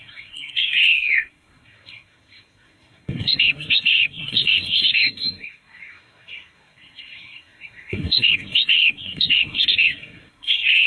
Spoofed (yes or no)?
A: yes